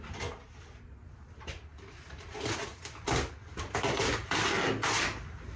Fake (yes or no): no